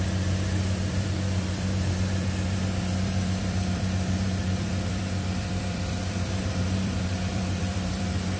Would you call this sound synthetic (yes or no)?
yes